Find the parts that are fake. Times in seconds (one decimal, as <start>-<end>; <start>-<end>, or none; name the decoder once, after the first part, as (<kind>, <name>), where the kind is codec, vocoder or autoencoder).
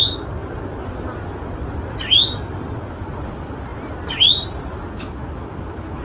none